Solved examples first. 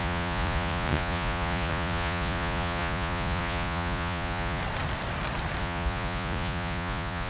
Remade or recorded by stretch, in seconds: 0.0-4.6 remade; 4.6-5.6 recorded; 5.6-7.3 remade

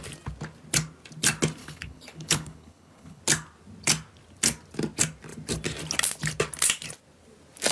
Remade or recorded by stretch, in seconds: 0.0-1.6 recorded; 1.6-3.2 remade; 3.2-7.7 recorded

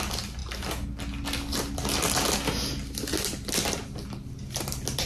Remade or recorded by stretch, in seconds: 0.0-5.1 recorded

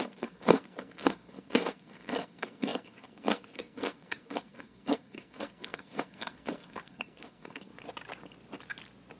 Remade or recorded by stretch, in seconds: 0.0-7.7 remade; 7.7-9.2 recorded